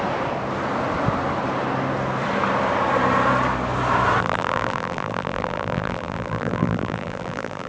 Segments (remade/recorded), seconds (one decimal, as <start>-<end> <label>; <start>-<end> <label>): 0.0-4.2 recorded; 4.2-7.7 remade